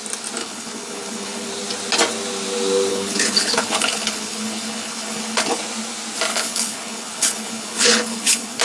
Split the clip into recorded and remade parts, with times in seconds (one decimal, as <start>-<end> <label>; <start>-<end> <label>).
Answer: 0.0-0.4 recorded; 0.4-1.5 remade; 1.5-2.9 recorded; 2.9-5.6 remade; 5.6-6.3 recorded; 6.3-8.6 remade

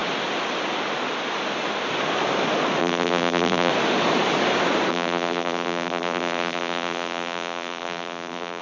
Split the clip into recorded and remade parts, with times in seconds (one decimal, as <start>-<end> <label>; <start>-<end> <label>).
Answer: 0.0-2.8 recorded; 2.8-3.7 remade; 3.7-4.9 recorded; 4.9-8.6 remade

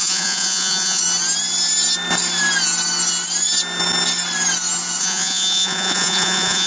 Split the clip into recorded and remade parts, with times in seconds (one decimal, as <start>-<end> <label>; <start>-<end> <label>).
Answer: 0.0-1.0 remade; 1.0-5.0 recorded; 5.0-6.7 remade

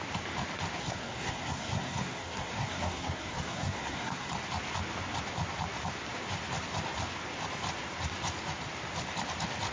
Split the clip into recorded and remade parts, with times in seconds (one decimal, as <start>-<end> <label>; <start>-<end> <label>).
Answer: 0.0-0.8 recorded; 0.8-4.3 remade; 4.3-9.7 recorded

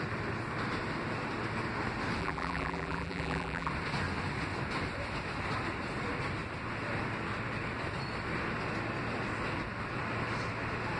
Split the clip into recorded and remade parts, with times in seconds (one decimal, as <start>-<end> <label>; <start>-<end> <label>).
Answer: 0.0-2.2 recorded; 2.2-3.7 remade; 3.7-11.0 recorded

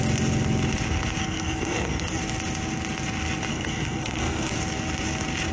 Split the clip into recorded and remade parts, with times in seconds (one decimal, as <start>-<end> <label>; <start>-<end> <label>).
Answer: 0.0-1.2 recorded; 1.2-2.2 remade; 2.2-3.5 recorded; 3.5-4.5 remade; 4.5-5.5 recorded

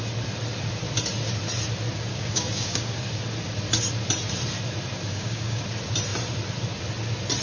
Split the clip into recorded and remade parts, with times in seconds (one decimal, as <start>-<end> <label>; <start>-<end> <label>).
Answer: 0.0-2.1 recorded; 2.1-3.2 remade; 3.2-5.1 recorded; 5.1-5.6 remade; 5.6-7.4 recorded

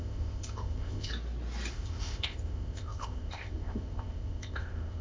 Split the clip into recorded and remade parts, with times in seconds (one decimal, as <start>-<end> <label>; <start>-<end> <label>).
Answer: 0.0-1.1 remade; 1.1-1.7 recorded; 1.7-5.0 remade